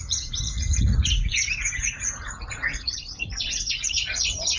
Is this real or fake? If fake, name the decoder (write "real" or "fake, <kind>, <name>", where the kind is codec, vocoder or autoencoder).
fake, vocoder, Vocos